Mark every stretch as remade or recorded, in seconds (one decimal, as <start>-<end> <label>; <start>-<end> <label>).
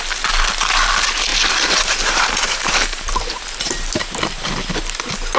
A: 0.0-1.3 recorded; 1.3-4.5 remade; 4.5-5.4 recorded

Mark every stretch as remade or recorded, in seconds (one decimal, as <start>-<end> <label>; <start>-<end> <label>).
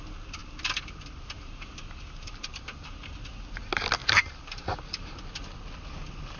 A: 0.0-0.4 recorded; 0.4-2.5 remade; 2.5-4.0 recorded; 4.0-4.7 remade; 4.7-6.4 recorded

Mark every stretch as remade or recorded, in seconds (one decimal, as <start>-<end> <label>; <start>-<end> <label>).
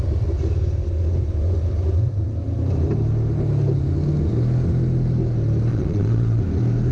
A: 0.0-5.7 recorded; 5.7-6.4 remade; 6.4-6.9 recorded